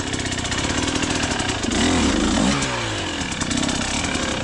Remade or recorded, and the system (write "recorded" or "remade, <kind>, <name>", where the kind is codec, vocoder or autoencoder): recorded